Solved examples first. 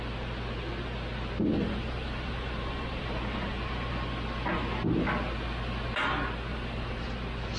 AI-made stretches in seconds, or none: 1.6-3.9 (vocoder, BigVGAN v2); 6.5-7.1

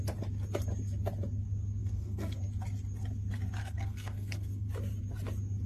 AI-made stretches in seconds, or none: 1.8-2.4 (codec, SNAC); 3.6-4.7

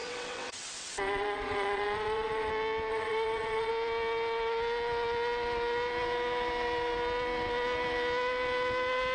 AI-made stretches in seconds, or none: 0.0-2.5 (vocoder, WaveNeXt); 2.9-3.7

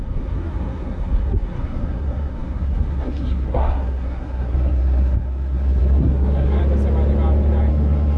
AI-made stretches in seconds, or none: 0.0-6.6 (codec, SNAC); 7.7-8.2

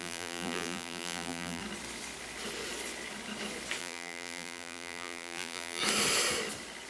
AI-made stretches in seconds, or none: 0.0-1.6 (vocoder, BigVGAN v2); 3.8-5.8

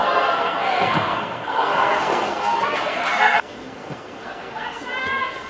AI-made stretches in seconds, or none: 0.0-5.5 (codec, SNAC)